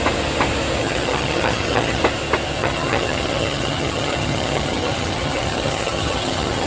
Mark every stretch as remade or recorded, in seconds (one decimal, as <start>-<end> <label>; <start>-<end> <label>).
0.0-0.8 recorded; 0.8-2.0 remade; 2.0-2.6 recorded; 2.6-6.7 remade